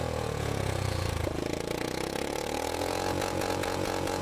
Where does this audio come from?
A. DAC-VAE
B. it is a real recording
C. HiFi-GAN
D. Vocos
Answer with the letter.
D